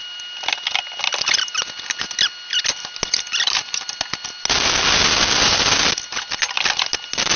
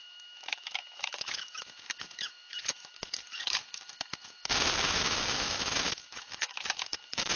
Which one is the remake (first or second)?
second